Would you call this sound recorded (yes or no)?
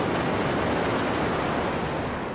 yes